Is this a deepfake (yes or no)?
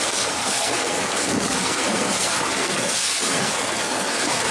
yes